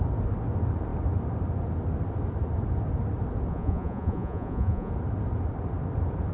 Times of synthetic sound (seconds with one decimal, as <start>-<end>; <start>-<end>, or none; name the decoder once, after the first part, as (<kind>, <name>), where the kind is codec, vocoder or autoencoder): 3.5-4.9 (vocoder, Vocos)